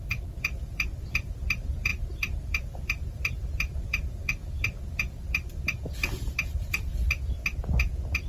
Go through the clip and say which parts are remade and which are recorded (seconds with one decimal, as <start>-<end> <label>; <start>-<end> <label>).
0.0-6.9 remade; 6.9-8.3 recorded